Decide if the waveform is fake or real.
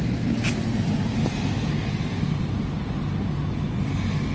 real